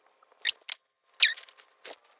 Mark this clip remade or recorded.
recorded